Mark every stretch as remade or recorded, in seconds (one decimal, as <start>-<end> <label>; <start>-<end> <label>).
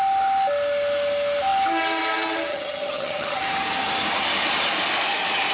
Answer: 0.0-2.5 recorded; 2.5-3.4 remade; 3.4-5.5 recorded